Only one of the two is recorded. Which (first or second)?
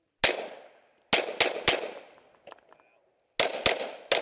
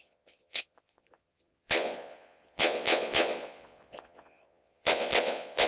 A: first